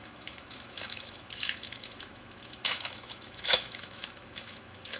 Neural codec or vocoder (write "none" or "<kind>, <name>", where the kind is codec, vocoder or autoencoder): autoencoder, DAC-VAE